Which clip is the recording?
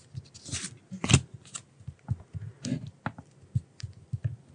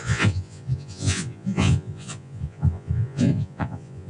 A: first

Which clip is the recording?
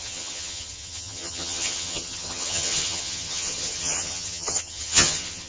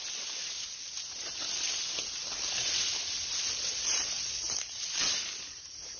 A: second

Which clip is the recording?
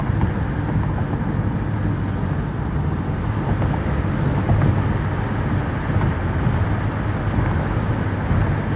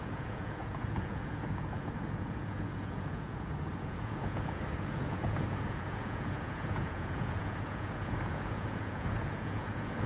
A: first